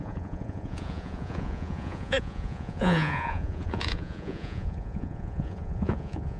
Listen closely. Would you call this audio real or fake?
fake